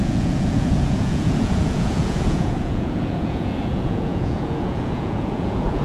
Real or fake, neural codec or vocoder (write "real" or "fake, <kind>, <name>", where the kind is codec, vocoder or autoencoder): fake, vocoder, Vocos